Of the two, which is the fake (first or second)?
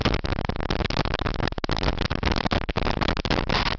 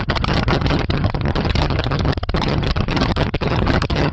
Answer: second